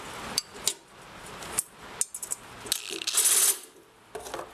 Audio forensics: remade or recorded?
recorded